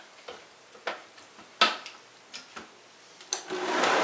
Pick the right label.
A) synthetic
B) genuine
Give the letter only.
B